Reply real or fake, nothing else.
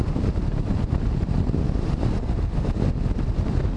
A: real